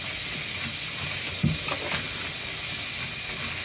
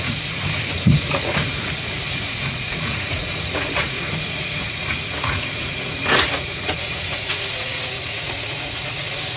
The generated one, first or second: second